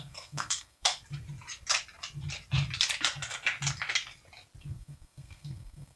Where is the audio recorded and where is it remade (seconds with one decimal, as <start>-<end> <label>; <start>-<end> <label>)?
0.0-1.0 remade; 1.0-4.6 recorded; 4.6-6.0 remade